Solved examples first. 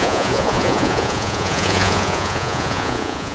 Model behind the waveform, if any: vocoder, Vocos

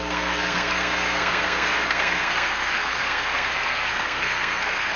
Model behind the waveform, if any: codec, SNAC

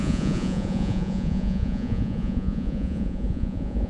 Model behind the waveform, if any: vocoder, Vocos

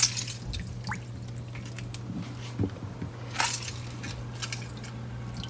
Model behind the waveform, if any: none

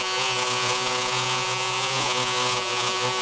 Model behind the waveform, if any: vocoder, Vocos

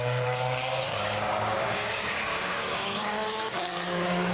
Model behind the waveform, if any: codec, DAC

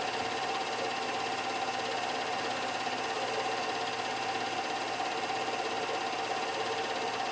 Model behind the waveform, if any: none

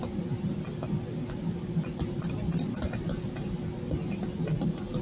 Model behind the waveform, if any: none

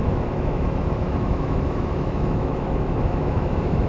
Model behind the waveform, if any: autoencoder, DAC-VAE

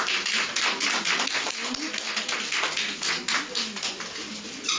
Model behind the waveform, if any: none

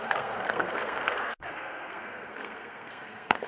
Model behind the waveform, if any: codec, SNAC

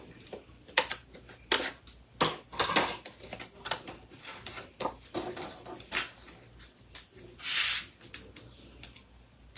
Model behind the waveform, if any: none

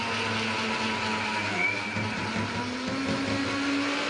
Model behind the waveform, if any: none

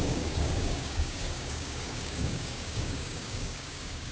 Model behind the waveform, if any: codec, DAC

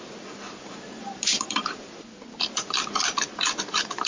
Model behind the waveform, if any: vocoder, BigVGAN v2